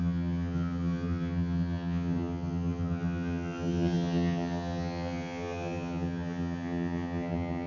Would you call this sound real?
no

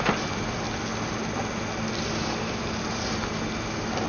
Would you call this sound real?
yes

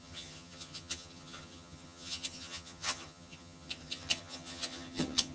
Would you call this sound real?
no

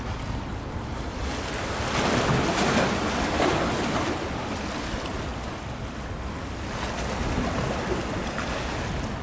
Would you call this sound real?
yes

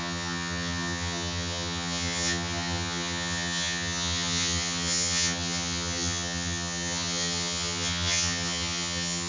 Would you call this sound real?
no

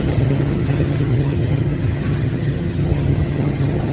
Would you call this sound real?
no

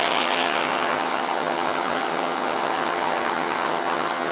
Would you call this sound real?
no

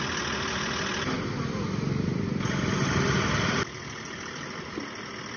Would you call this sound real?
yes